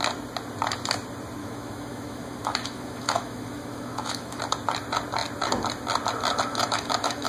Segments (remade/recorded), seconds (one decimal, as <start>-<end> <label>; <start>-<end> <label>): 0.0-1.4 recorded; 1.4-4.4 remade; 4.4-6.5 recorded; 6.5-7.3 remade